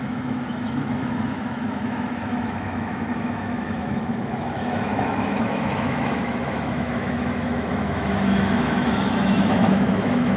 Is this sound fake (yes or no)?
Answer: yes